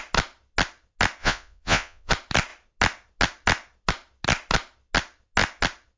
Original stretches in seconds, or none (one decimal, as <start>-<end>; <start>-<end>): 0.0-1.2; 2.1-6.0

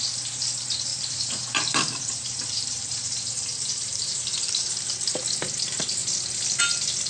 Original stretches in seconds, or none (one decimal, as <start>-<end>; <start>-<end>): 0.0-0.9; 4.7-7.1

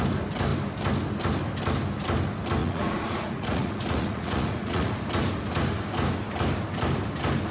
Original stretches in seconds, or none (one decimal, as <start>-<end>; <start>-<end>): 0.0-2.6; 5.0-7.5

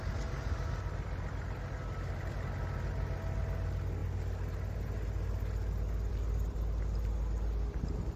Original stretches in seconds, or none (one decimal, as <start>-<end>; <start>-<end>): 0.0-8.2

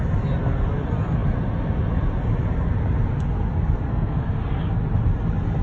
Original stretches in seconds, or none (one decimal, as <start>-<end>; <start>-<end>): 0.0-3.9; 4.4-5.6

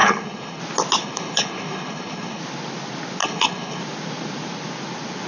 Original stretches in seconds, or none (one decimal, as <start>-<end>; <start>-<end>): 0.6-1.0; 2.4-3.2; 3.8-5.3